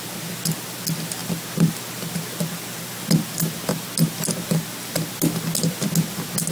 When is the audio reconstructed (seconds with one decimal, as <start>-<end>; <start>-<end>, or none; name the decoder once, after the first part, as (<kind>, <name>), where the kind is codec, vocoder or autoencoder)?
none